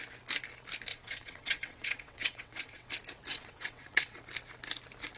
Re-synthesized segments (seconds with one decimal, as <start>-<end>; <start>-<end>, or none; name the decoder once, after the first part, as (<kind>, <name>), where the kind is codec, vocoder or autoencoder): 0.9-2.9 (vocoder, WaveNeXt); 3.3-4.2